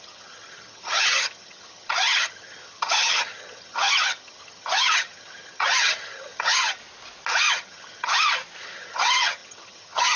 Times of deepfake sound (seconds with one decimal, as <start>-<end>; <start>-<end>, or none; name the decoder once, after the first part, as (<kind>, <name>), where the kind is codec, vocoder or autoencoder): 0.0-6.8 (vocoder, HiFi-GAN); 7.5-8.1; 8.6-10.2

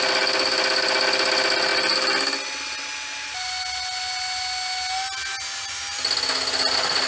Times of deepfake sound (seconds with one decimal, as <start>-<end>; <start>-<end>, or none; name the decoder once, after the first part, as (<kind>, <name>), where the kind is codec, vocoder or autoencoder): none

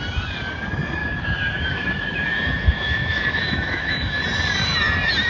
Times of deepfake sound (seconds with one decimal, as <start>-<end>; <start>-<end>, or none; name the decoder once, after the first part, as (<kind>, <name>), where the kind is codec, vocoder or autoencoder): 1.0-4.2 (autoencoder, DAC-VAE)

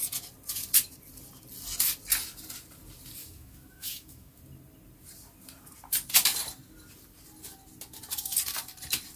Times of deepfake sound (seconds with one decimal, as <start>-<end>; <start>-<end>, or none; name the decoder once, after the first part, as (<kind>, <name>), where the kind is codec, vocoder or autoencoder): 3.2-4.4 (autoencoder, DAC-VAE)

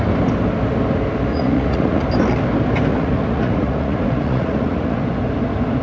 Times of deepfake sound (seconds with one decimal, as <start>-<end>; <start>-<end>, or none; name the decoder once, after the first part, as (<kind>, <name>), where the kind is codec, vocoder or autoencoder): 1.3-2.0 (vocoder, Vocos); 2.9-5.0

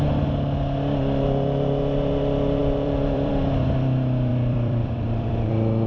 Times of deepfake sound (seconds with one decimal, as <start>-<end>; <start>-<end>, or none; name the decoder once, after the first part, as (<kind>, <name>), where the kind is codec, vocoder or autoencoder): 2.6-3.3 (vocoder, BigVGAN v2); 4.3-5.5